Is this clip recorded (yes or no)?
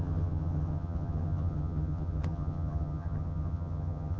no